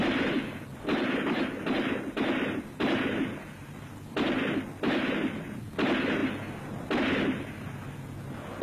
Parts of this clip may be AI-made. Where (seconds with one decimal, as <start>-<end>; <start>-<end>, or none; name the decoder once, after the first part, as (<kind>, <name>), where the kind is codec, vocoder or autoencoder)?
0.0-2.8 (vocoder, BigVGAN v2); 3.6-4.4; 6.2-7.0